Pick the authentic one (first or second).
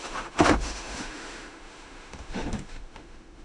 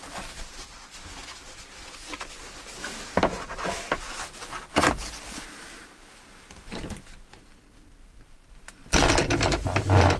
second